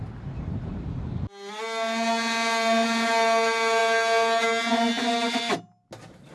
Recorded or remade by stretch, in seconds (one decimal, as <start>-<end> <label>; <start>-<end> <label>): 0.0-6.3 recorded